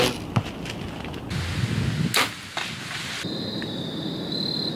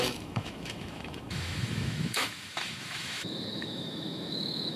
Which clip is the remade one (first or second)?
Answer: second